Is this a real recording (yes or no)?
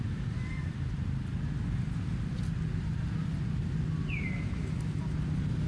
yes